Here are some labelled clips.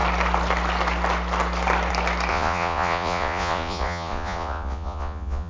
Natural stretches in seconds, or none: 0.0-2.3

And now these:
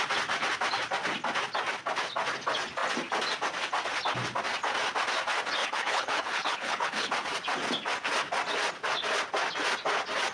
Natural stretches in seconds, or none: 0.0-5.6; 7.1-10.3

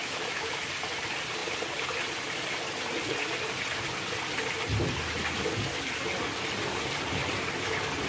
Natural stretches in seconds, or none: 0.6-8.1

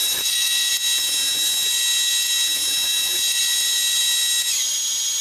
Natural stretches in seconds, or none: 0.7-5.2

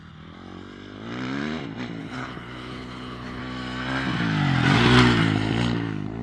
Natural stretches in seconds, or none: 0.0-2.0; 3.4-6.2

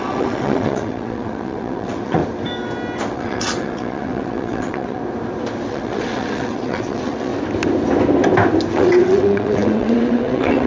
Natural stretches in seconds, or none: 2.2-3.1; 5.0-5.7; 7.3-8.7

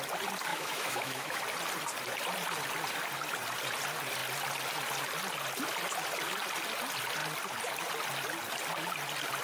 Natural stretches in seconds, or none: 0.0-0.5; 1.4-9.4

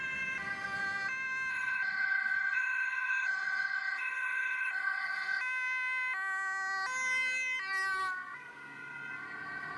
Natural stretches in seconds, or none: 0.0-1.5; 5.4-9.8